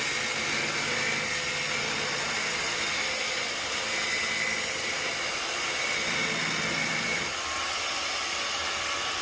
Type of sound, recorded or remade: recorded